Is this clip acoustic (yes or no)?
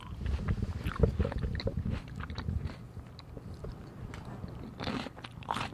yes